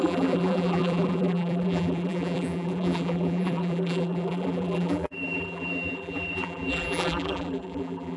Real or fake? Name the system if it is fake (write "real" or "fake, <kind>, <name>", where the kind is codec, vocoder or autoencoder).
fake, vocoder, BigVGAN v2